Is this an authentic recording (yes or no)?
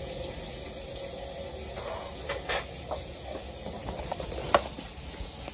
yes